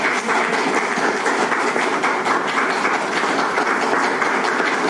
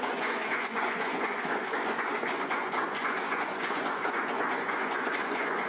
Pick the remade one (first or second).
second